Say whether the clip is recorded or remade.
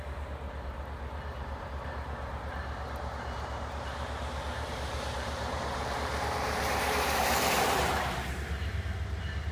remade